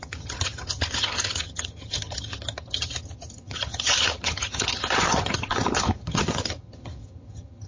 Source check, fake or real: fake